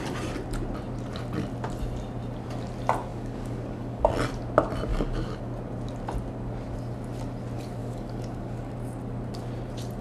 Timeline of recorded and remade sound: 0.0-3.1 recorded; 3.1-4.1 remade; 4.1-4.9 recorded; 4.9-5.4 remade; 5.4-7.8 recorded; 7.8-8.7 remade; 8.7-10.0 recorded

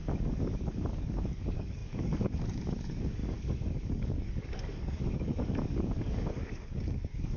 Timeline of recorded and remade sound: 0.0-7.4 remade

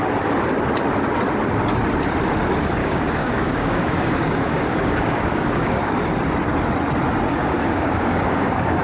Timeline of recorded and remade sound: 0.0-2.8 recorded; 2.8-5.9 remade; 5.9-7.3 recorded; 7.3-8.8 remade

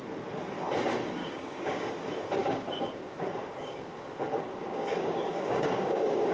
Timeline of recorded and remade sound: 0.0-1.2 recorded; 1.2-1.9 remade; 1.9-2.4 recorded; 2.4-6.3 remade

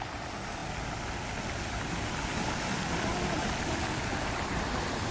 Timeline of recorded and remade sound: 0.0-5.1 recorded

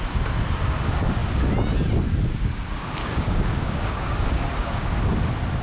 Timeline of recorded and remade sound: 0.0-3.0 recorded; 3.0-4.9 remade; 4.9-5.6 recorded

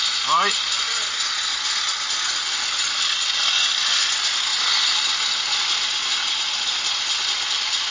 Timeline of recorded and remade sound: 0.0-7.9 recorded

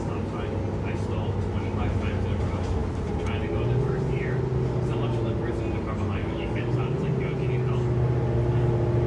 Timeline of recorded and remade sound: 0.0-6.2 recorded; 6.2-6.8 remade; 6.8-9.1 recorded